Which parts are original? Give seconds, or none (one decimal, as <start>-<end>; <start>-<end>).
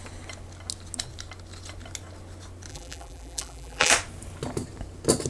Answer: 0.0-2.7; 3.9-5.3